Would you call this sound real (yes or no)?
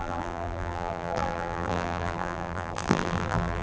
no